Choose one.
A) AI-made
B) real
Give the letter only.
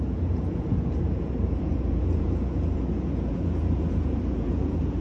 A